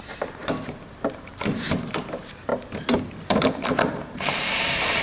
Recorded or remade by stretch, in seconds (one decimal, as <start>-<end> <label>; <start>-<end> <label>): 0.0-2.5 remade; 2.5-3.2 recorded; 3.2-5.0 remade